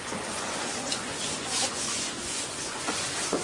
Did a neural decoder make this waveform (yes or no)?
yes